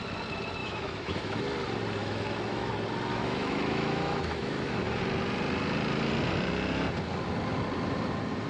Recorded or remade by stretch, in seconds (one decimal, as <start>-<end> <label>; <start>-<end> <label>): 0.0-0.6 recorded; 0.6-1.4 remade; 1.4-2.0 recorded; 2.0-2.7 remade; 2.7-3.1 recorded; 3.1-5.0 remade; 5.0-8.5 recorded